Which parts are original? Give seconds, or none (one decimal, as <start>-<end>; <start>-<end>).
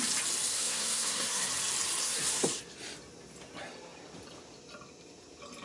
0.0-0.5; 1.5-2.0; 2.6-5.6